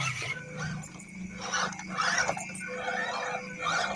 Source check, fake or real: real